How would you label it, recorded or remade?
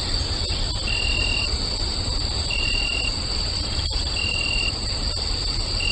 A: remade